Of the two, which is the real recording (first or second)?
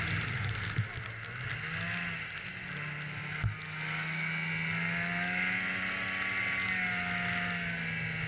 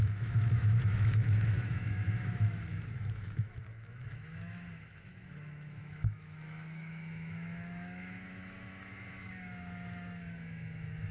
first